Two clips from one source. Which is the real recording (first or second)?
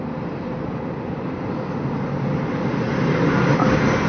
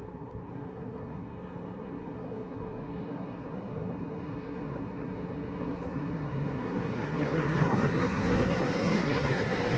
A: first